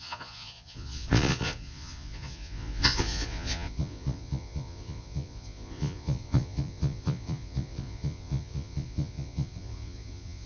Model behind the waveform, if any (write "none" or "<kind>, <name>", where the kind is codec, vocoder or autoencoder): vocoder, Vocos